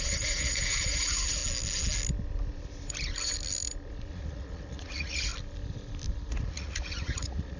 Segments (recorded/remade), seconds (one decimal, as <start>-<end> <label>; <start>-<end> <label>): 0.0-1.4 remade; 1.4-4.1 recorded; 4.1-5.3 remade; 5.3-6.3 recorded; 6.3-7.6 remade